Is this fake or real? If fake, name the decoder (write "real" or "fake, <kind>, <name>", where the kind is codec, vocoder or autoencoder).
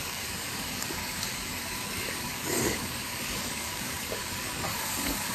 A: fake, codec, DAC